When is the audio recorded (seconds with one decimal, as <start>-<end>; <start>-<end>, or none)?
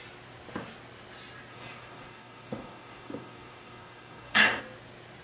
0.0-1.5; 4.6-5.2